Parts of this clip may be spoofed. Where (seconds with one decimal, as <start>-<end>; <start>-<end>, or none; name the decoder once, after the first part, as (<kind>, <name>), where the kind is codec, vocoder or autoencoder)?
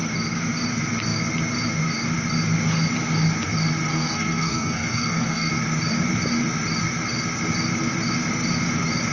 3.9-5.5 (codec, SNAC)